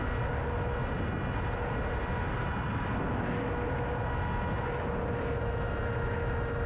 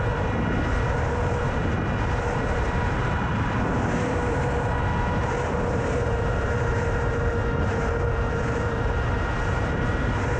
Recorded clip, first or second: first